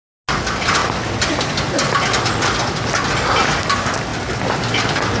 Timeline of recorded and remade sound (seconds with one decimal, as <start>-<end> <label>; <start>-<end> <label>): 0.0-5.2 recorded